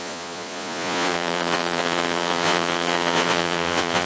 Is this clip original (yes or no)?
no